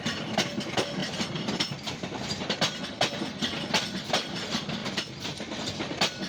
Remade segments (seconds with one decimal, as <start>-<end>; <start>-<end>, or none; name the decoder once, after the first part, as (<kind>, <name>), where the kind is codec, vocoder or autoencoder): 1.0-2.4 (vocoder, BigVGAN v2)